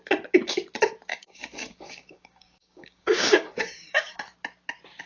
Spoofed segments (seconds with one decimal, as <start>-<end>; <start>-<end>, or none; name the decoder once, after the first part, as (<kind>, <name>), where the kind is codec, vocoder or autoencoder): 1.1-4.2 (codec, DAC)